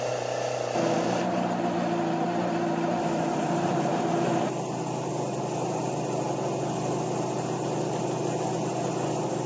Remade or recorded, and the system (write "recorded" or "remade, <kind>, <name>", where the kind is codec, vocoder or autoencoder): recorded